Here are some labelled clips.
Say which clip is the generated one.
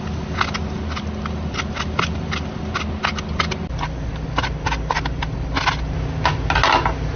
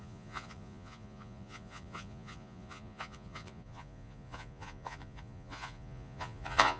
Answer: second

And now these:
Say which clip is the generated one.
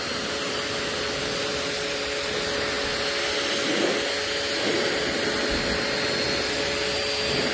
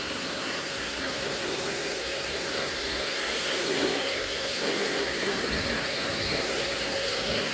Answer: second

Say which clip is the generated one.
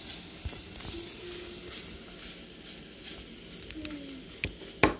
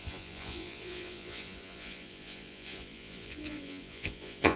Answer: second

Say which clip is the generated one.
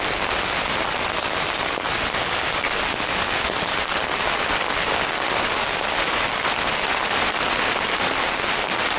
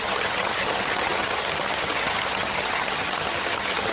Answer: second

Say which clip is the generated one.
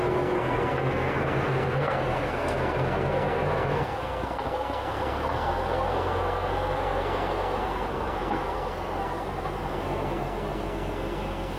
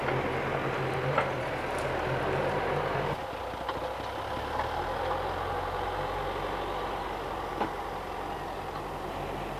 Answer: first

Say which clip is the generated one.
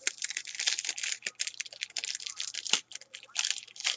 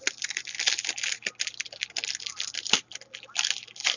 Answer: first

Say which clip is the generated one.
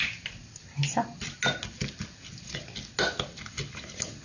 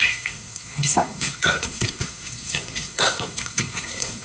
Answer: second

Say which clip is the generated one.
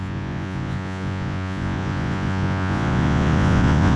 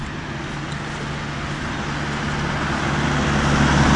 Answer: first